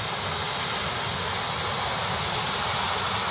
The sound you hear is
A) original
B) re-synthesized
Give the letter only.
A